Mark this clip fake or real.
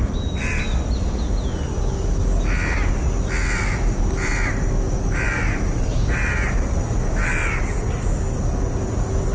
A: real